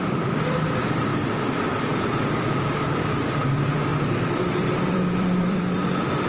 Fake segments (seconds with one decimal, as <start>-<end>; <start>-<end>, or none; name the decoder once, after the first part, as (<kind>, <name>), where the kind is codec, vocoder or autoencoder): 0.0-6.3 (vocoder, BigVGAN v2)